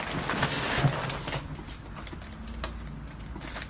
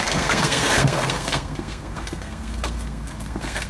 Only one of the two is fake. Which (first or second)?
second